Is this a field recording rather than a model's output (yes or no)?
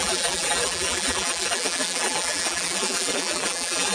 no